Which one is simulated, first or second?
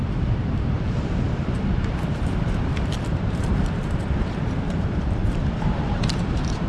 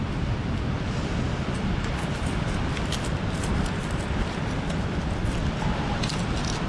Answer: first